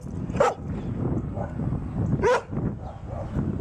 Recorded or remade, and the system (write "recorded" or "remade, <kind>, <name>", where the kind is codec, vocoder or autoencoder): recorded